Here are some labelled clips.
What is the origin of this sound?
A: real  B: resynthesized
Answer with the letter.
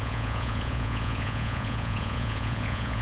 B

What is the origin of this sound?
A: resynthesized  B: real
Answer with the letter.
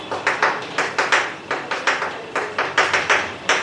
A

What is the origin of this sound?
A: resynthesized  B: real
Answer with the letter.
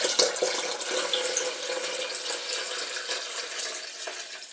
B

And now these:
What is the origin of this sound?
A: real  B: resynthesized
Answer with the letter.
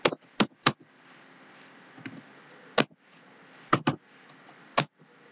A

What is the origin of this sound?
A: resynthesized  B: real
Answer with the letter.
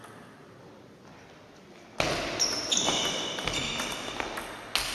B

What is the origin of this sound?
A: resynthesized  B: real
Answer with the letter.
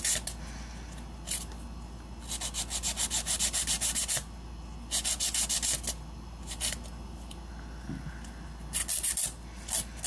B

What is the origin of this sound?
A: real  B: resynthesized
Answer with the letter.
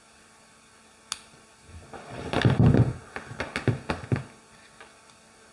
A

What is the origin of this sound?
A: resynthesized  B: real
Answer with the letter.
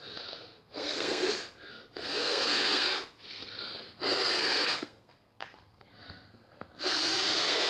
A